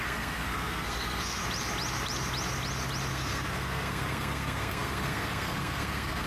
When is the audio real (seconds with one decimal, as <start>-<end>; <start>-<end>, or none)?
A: 1.4-3.1